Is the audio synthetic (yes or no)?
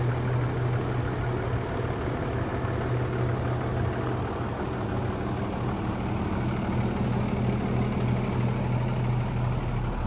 no